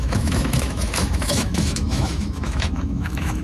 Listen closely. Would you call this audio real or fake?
fake